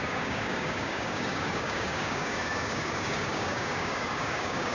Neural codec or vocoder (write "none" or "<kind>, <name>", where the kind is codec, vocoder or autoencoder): codec, DAC